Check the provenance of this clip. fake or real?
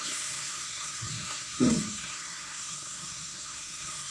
fake